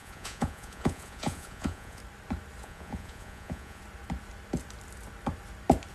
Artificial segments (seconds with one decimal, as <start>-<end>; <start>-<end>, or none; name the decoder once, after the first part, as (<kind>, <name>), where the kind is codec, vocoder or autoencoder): 0.0-2.0 (vocoder, Vocos); 2.6-3.8